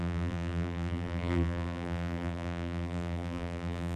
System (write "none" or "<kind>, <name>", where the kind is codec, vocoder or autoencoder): vocoder, BigVGAN v2